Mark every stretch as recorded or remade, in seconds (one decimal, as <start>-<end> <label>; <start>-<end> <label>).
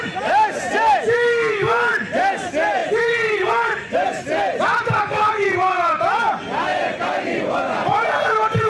0.0-2.8 recorded; 2.8-4.1 remade; 4.1-6.7 recorded; 6.7-8.1 remade; 8.1-8.7 recorded